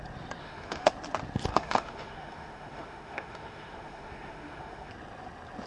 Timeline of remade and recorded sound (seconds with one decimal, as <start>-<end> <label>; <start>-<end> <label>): 0.0-0.4 recorded; 0.4-0.9 remade; 0.9-1.5 recorded; 1.5-4.9 remade; 4.9-5.7 recorded